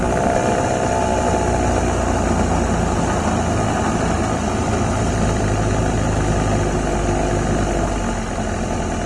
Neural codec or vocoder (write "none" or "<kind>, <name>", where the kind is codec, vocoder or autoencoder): none